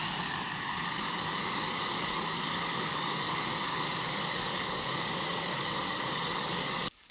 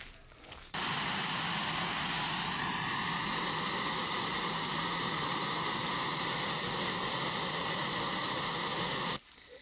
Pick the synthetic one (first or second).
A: first